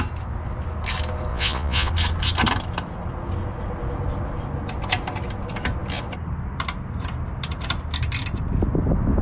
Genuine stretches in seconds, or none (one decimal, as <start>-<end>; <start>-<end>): 0.0-1.3; 1.9-9.2